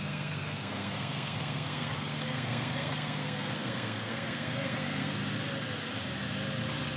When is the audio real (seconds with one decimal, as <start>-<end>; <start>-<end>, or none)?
5.2-7.0